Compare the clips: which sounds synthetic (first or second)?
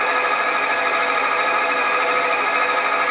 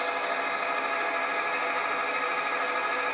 first